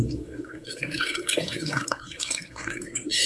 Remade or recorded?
remade